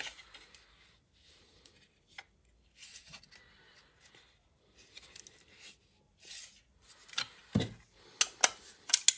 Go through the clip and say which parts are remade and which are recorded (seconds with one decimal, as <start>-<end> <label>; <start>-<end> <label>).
0.0-2.8 recorded; 2.8-3.3 remade; 3.3-9.2 recorded